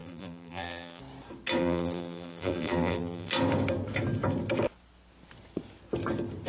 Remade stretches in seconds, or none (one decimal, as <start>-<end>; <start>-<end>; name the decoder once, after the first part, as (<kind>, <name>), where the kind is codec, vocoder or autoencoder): 0.0-1.0 (vocoder, BigVGAN v2); 1.6-3.3